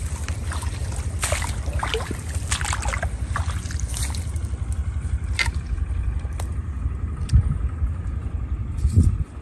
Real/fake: real